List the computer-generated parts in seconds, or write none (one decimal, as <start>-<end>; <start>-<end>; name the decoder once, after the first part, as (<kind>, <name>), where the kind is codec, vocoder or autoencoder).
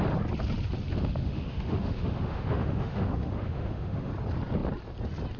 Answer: 0.9-4.1 (autoencoder, DAC-VAE)